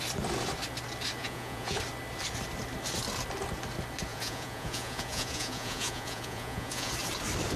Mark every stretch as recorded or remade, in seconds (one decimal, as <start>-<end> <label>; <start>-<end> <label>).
0.0-1.2 recorded; 1.2-1.8 remade; 1.8-4.1 recorded; 4.1-6.9 remade; 6.9-7.6 recorded